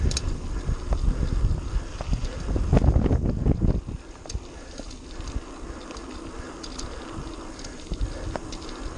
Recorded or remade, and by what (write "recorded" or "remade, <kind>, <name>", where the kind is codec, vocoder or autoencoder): recorded